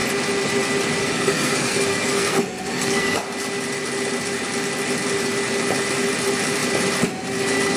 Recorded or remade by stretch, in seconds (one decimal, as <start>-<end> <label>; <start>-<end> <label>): 0.0-1.0 recorded; 1.0-3.2 remade; 3.2-7.8 recorded